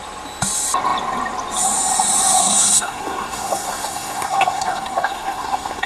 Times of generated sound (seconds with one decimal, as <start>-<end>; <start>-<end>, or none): 2.4-5.9